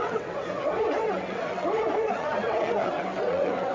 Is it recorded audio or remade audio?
remade